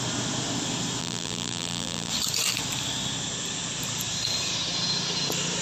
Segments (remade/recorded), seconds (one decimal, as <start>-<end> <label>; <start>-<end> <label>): 0.0-1.0 recorded; 1.0-2.1 remade; 2.1-5.6 recorded